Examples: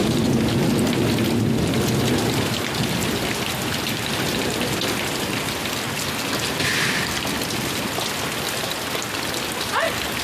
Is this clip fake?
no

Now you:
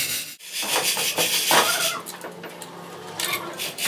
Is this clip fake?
no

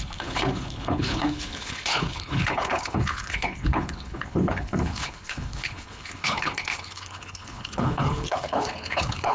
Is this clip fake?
yes